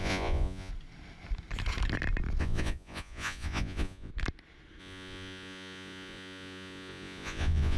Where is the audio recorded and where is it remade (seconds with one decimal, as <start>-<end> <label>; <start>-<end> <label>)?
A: 0.0-0.7 remade; 0.7-2.4 recorded; 2.4-4.1 remade; 4.1-4.8 recorded; 4.8-7.8 remade